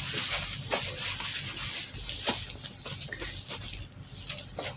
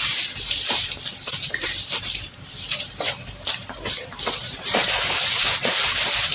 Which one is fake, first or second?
second